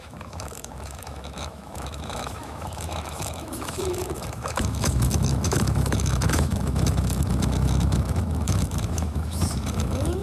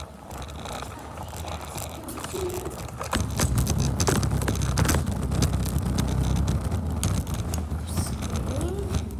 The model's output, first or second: first